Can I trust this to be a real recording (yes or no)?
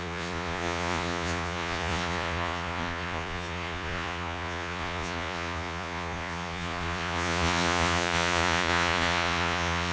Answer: no